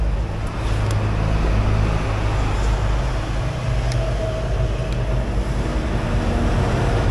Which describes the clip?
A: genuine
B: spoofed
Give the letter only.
A